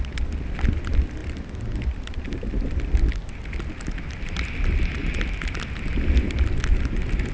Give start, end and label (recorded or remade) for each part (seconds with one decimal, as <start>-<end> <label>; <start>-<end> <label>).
0.0-7.3 recorded